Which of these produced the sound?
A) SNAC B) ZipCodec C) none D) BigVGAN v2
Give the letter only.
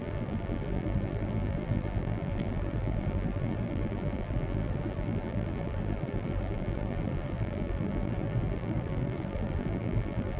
D